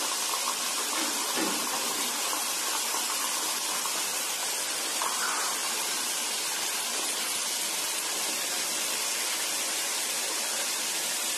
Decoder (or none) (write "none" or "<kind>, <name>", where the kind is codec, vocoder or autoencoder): vocoder, BigVGAN v2